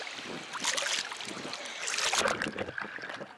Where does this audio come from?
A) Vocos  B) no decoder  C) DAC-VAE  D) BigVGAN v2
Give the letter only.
B